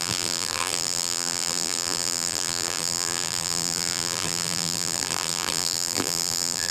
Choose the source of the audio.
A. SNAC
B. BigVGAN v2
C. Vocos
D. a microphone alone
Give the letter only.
B